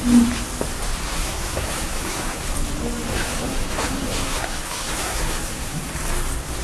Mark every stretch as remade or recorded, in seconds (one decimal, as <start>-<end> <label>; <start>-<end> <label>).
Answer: 0.0-1.1 recorded; 1.1-2.4 remade; 2.4-3.1 recorded; 3.1-5.9 remade; 5.9-6.6 recorded

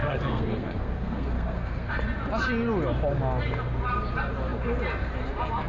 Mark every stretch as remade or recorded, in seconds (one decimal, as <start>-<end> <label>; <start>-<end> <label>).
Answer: 0.0-1.9 remade; 1.9-5.7 recorded

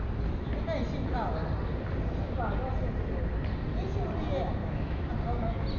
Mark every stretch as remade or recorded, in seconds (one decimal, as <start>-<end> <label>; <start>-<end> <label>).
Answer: 0.0-4.6 recorded; 4.6-5.1 remade; 5.1-5.8 recorded

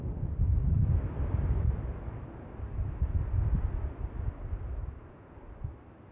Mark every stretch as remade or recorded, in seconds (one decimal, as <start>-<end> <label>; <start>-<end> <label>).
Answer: 0.0-4.8 recorded; 4.8-5.3 remade; 5.3-6.1 recorded

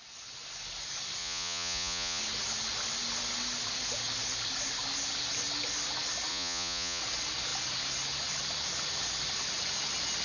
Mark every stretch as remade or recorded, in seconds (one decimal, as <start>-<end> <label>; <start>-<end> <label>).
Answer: 0.0-1.2 recorded; 1.2-2.2 remade; 2.2-6.3 recorded; 6.3-7.0 remade; 7.0-10.2 recorded

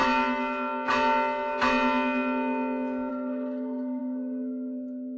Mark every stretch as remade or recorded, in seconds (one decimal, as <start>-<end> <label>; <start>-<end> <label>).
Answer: 0.0-3.1 recorded; 3.1-5.2 remade

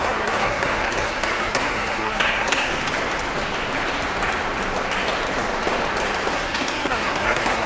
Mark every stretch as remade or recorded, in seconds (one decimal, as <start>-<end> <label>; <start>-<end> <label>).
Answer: 0.0-2.7 remade; 2.7-6.3 recorded; 6.3-7.7 remade